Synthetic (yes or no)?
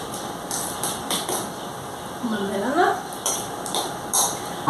no